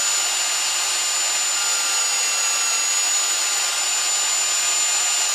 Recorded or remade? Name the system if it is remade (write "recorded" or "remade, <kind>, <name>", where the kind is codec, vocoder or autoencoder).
recorded